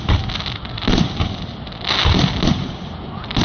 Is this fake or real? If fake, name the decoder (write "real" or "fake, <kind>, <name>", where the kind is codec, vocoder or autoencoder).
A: real